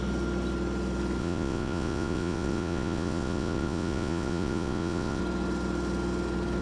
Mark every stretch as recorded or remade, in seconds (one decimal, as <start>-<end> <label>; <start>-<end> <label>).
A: 0.0-1.2 recorded; 1.2-5.2 remade; 5.2-6.6 recorded